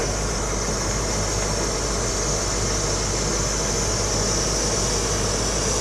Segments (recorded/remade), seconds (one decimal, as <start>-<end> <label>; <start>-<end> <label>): 0.0-5.8 recorded